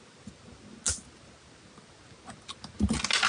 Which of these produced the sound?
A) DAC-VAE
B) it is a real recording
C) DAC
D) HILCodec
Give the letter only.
B